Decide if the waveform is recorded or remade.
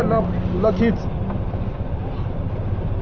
recorded